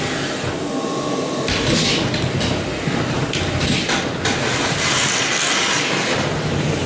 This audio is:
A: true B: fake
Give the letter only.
A